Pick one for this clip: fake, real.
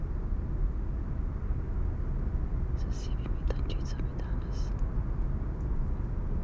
real